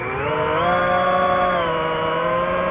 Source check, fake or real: real